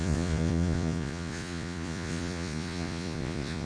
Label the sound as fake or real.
fake